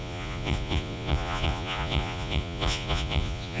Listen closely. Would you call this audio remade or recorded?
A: remade